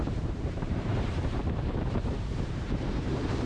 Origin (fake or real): fake